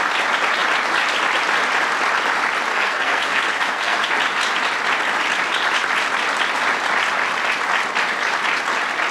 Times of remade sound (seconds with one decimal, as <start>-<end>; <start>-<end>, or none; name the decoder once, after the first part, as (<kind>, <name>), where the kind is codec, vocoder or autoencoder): 2.7-4.1 (codec, SNAC)